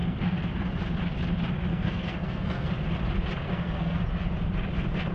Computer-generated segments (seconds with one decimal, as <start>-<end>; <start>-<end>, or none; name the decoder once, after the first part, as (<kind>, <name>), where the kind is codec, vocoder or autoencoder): 0.0-0.5 (codec, SNAC); 1.7-2.7; 3.4-4.0